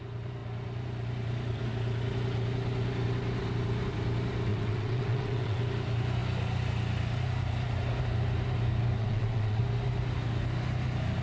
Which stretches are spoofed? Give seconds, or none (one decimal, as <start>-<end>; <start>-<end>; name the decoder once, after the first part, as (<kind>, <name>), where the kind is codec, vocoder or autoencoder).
4.5-5.6 (vocoder, WaveNeXt); 9.0-9.6